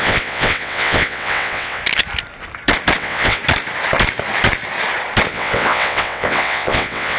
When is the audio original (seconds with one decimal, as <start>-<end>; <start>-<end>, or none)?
1.8-3.0; 3.4-5.3